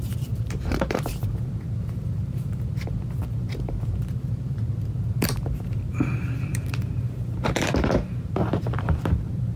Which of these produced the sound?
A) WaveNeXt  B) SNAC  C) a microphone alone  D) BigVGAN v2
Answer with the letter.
D